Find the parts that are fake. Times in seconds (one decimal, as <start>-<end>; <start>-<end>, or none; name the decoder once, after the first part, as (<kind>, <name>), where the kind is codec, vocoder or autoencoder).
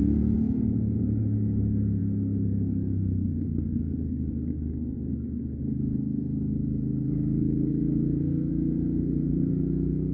0.0-10.1 (codec, SNAC)